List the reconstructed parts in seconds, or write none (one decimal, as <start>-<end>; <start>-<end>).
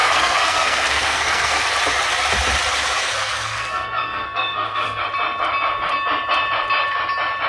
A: 0.0-1.6; 3.0-5.0